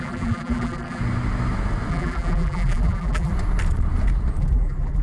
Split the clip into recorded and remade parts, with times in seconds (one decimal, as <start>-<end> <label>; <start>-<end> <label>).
0.0-1.0 remade; 1.0-1.9 recorded; 1.9-3.3 remade; 3.3-4.4 recorded; 4.4-5.0 remade